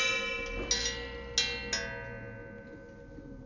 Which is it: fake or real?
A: real